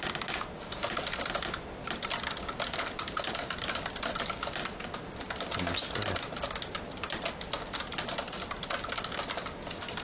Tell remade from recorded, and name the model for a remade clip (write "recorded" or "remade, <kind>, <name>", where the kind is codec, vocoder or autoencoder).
recorded